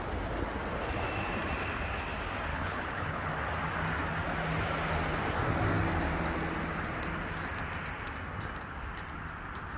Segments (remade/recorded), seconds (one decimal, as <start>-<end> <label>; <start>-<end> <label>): 0.0-2.5 recorded; 2.5-3.3 remade; 3.3-9.8 recorded